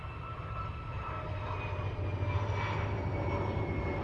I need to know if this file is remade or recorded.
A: recorded